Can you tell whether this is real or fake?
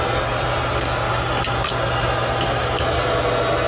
real